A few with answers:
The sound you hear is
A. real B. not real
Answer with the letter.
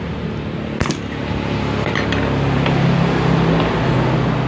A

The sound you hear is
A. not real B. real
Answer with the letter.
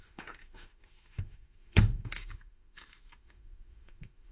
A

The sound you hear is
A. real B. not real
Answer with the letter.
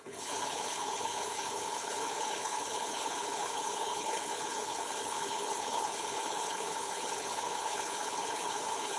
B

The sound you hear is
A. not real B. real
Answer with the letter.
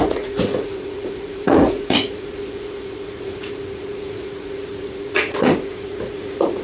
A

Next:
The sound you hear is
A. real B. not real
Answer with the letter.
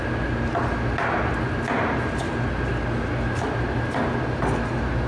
A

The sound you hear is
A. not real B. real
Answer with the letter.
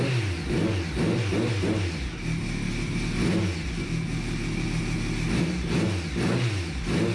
B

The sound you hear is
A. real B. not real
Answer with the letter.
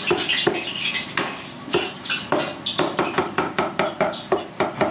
A